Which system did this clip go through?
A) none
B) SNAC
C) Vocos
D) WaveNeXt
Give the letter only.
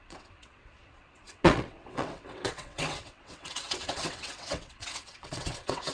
D